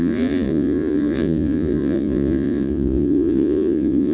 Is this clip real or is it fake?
fake